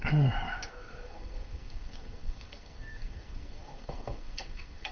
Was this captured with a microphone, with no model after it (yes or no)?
no